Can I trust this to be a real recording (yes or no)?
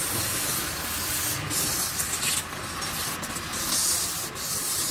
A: yes